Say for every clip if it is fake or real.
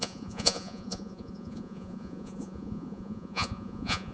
fake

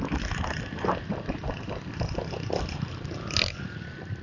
real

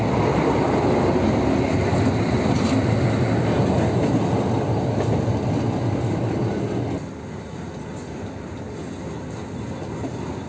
real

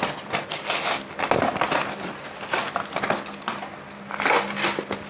real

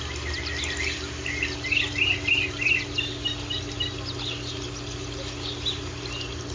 real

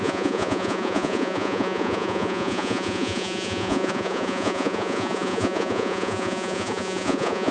fake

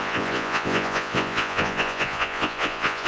fake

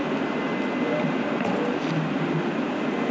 real